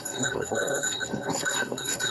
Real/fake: fake